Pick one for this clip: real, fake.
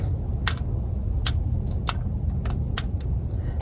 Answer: real